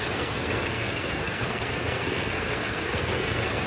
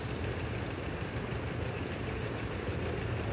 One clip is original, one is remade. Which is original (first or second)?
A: second